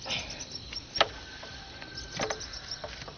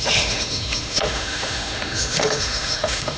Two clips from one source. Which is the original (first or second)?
first